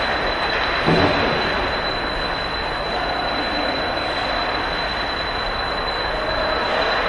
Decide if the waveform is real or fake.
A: real